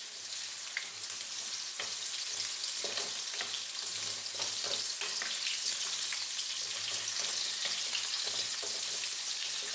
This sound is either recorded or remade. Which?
recorded